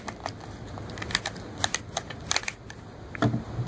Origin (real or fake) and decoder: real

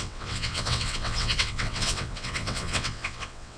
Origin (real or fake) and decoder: fake, vocoder, WaveNeXt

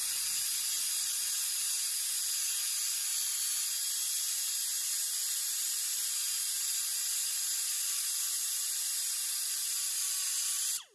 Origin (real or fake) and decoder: real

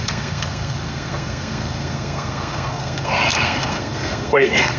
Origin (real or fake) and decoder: fake, codec, SNAC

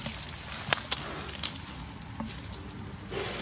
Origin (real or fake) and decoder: real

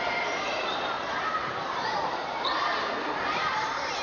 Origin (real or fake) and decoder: fake, vocoder, BigVGAN v2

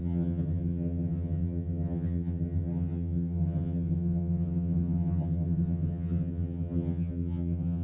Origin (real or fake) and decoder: fake, vocoder, HiFi-GAN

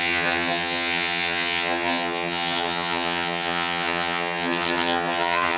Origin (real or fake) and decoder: fake, vocoder, HiFi-GAN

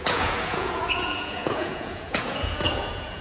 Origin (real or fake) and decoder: fake, vocoder, Vocos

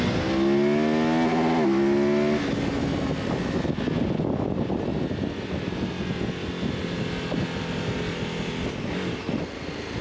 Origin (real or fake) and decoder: real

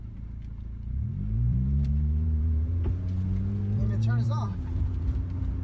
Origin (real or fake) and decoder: fake, vocoder, BigVGAN v2